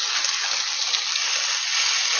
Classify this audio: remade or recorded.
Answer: recorded